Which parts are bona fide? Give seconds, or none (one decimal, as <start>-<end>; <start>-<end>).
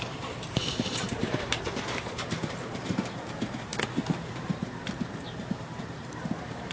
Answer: none